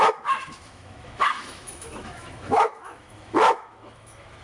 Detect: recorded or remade remade